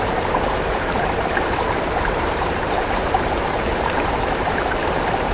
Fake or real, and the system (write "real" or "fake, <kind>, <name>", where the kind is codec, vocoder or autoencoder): fake, vocoder, BigVGAN v2